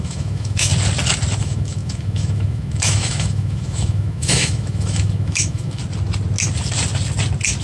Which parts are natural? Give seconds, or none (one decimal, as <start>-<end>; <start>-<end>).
0.7-1.4; 5.8-7.6